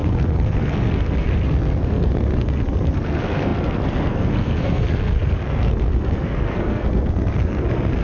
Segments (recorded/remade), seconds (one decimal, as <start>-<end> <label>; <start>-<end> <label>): 0.0-8.0 remade